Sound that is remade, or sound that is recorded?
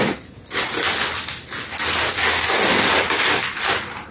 recorded